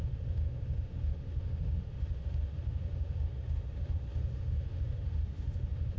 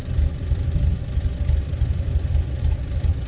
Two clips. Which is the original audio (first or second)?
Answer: second